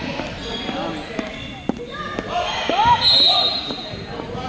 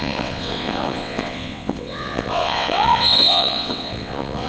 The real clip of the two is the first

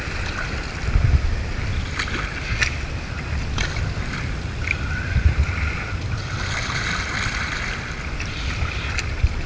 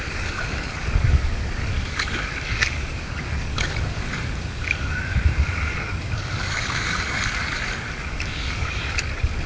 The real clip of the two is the first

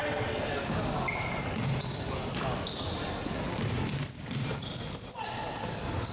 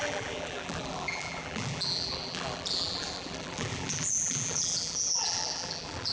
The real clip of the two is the first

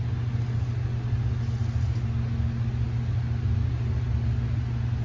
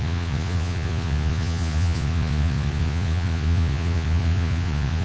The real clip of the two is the first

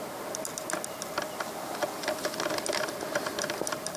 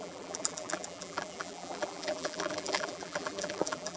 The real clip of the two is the first